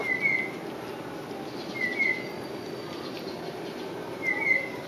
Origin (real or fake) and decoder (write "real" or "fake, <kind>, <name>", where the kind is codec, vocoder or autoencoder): real